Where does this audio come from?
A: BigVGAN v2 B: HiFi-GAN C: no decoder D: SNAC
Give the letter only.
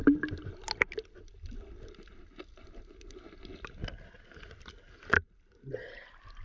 C